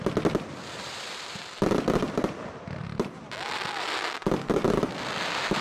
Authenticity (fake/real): fake